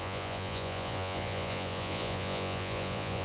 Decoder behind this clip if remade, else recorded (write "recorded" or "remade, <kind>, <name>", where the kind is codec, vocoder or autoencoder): remade, vocoder, Vocos